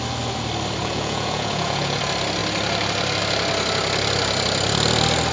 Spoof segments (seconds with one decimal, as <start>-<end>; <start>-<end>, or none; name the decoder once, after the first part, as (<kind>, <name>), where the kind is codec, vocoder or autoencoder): 0.8-2.0 (vocoder, Vocos)